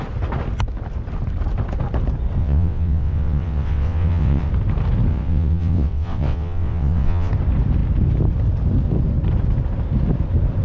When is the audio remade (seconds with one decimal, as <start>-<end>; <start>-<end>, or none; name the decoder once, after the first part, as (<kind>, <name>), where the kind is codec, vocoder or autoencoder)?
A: 2.4-4.5 (vocoder, WaveNeXt); 5.1-7.3